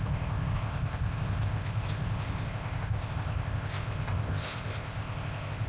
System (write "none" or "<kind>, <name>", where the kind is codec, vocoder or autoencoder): codec, ZipCodec